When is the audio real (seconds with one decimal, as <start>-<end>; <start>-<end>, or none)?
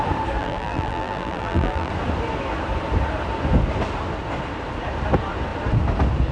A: 0.0-0.4; 1.9-6.3